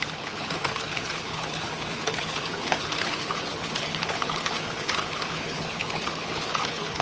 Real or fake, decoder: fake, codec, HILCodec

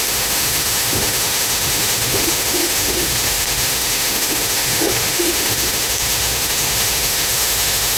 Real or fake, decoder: fake, autoencoder, DAC-VAE